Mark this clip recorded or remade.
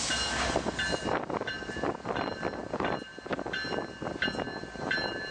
recorded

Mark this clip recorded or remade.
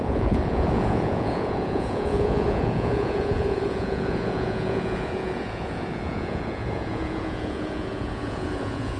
remade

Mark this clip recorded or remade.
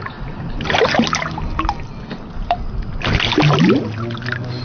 recorded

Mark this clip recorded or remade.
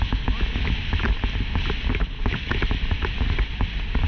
recorded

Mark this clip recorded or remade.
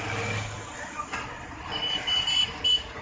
recorded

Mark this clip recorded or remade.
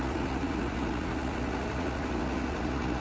remade